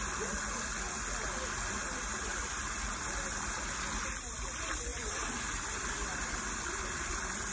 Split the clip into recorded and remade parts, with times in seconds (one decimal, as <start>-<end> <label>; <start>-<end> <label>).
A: 0.0-2.3 recorded; 2.3-2.8 remade; 2.8-4.9 recorded; 4.9-7.1 remade; 7.1-7.5 recorded